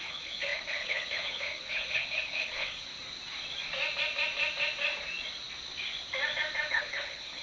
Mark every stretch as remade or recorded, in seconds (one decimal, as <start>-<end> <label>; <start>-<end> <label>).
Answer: 0.0-2.9 remade; 2.9-6.7 recorded; 6.7-7.4 remade